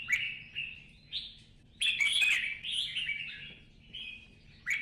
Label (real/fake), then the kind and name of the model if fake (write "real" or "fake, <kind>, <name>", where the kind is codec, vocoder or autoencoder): real